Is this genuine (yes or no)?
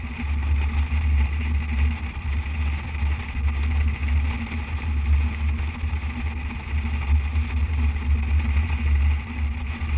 yes